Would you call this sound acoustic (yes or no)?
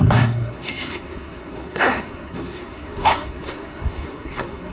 no